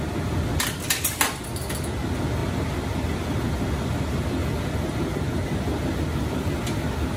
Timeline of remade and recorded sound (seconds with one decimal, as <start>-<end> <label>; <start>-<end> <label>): 0.0-7.2 recorded